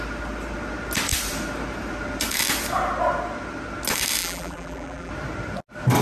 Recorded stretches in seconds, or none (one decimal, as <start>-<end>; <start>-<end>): 0.0-4.2; 5.1-6.0